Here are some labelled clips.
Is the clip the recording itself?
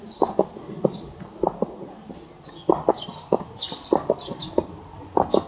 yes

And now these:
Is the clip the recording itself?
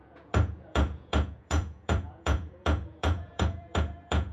no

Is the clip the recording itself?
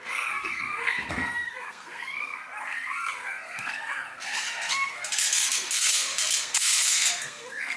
no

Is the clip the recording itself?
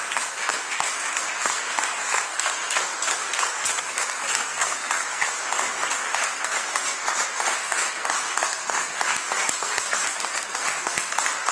no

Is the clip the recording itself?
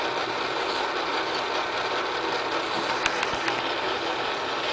yes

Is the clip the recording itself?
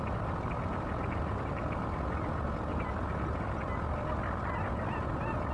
yes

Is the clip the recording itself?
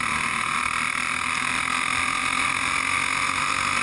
yes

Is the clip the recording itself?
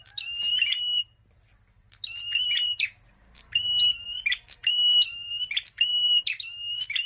no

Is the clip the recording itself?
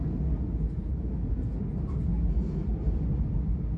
yes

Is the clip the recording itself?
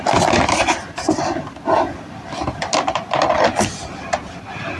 yes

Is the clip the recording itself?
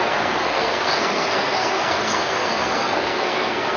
no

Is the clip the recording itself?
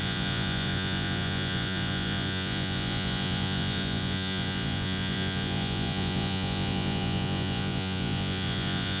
no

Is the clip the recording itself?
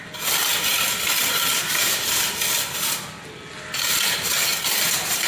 yes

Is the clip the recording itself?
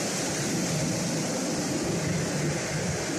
yes